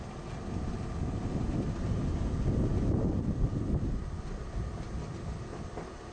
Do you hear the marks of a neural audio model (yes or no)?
no